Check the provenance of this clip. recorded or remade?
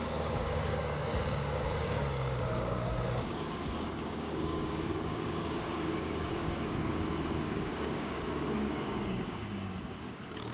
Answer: remade